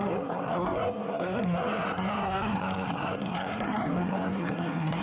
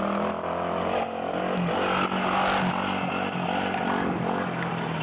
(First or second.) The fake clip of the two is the first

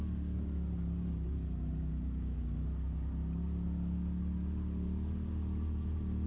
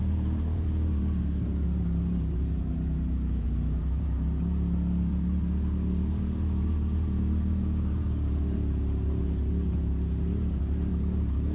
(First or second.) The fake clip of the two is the second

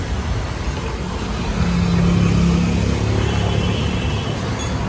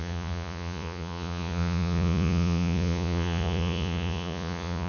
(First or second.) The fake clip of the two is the second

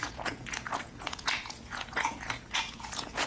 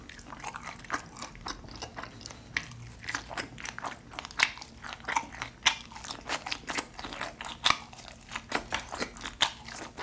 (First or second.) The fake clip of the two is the first